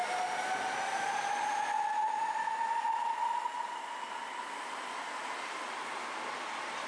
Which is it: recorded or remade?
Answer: recorded